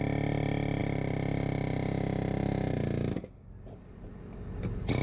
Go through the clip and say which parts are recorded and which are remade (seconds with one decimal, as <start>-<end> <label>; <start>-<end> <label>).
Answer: 0.0-5.0 recorded